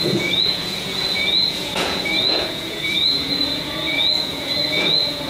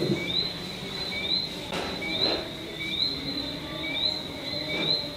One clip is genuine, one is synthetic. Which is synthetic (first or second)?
first